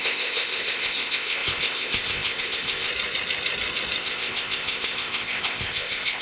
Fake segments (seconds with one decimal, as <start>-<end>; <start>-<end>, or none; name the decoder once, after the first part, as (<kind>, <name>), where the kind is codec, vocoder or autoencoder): 0.0-2.9 (codec, ZipCodec); 4.0-6.2